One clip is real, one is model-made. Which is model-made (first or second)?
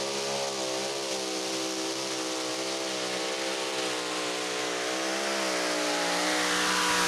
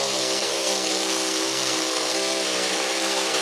second